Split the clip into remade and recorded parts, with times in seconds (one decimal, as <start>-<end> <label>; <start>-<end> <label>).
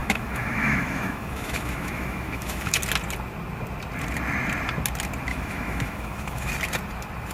0.0-2.8 remade; 2.8-5.3 recorded; 5.3-6.5 remade; 6.5-7.3 recorded